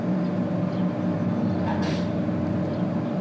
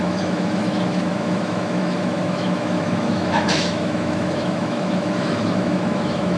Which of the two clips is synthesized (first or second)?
second